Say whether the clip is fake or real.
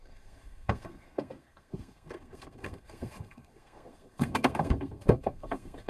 fake